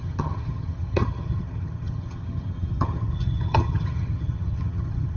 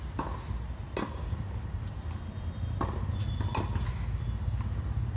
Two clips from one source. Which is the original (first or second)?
second